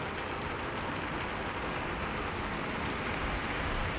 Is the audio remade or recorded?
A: recorded